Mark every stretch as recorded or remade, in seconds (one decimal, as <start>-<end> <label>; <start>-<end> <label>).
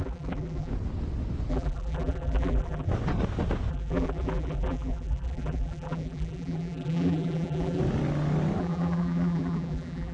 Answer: 0.0-0.7 remade; 0.7-1.5 recorded; 1.5-2.9 remade; 2.9-3.7 recorded; 3.7-7.8 remade; 7.8-8.6 recorded; 8.6-10.1 remade